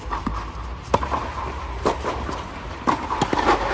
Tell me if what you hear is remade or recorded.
recorded